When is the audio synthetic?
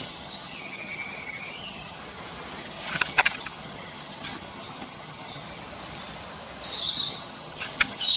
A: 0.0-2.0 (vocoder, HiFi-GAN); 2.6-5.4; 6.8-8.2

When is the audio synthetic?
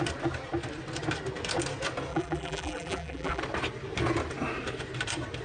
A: 2.1-3.4 (vocoder, BigVGAN v2)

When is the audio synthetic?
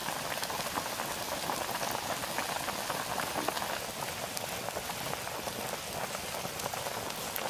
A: none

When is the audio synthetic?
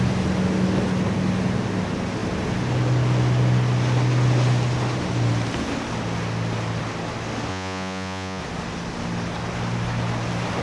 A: 7.5-8.4 (vocoder, Vocos)